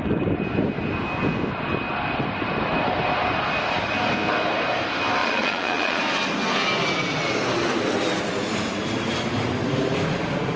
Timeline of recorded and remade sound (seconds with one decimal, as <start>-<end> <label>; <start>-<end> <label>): 0.0-5.2 recorded; 5.2-6.0 remade; 6.0-10.6 recorded